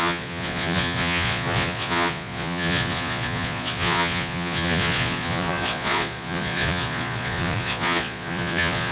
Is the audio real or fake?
fake